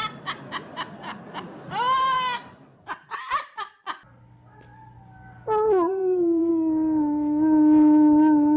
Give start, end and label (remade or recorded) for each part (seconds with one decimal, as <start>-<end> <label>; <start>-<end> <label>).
0.0-2.7 recorded; 2.7-3.7 remade; 3.7-5.9 recorded; 5.9-6.5 remade; 6.5-8.6 recorded